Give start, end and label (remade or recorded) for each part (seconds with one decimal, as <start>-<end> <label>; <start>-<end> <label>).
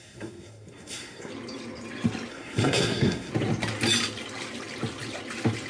0.0-1.3 remade; 1.3-2.3 recorded; 2.3-3.3 remade; 3.3-5.7 recorded